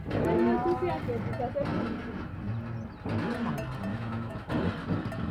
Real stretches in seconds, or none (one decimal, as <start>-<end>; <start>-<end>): 0.0-3.9; 4.5-5.3

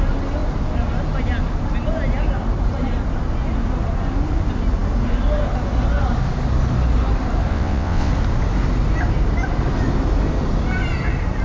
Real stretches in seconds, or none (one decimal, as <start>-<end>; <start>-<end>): 0.0-7.5; 8.1-11.4

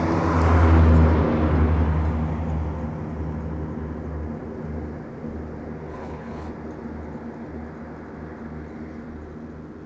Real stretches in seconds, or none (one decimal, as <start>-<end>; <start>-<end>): 0.0-5.9; 6.5-9.9